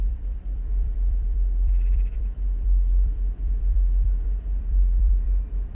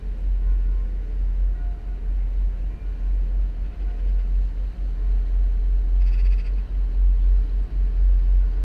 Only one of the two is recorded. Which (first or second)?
second